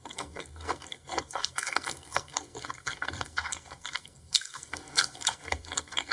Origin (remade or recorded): remade